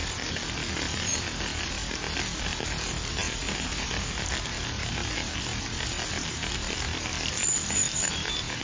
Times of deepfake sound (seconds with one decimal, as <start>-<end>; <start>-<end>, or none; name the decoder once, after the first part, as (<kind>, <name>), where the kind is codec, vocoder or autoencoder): 3.4-4.4 (vocoder, BigVGAN v2)